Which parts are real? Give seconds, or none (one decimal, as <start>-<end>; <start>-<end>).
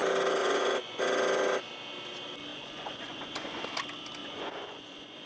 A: 0.0-0.4; 1.0-2.5; 3.6-4.2